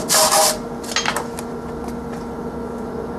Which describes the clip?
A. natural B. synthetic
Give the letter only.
A